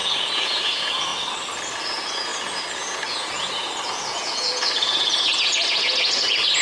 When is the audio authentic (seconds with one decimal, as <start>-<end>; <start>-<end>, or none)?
1.1-1.8